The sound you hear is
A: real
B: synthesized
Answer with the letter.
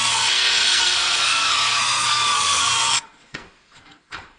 B